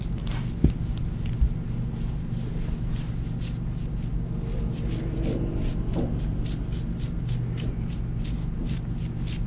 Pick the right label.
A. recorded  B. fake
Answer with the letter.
A